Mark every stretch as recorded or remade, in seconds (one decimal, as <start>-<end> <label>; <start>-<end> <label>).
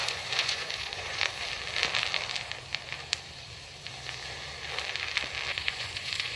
0.0-1.3 remade; 1.3-5.5 recorded; 5.5-6.4 remade